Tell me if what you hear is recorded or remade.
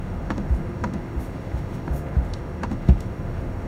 remade